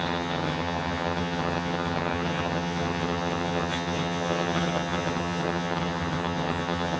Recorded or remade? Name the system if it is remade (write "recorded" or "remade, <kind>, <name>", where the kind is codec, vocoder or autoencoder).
remade, vocoder, HiFi-GAN